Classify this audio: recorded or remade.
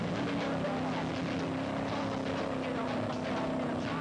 recorded